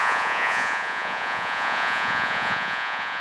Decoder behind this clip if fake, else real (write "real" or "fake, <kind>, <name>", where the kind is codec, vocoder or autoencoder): fake, vocoder, Vocos